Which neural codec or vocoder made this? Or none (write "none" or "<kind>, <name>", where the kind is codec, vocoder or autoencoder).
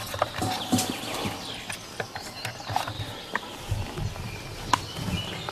none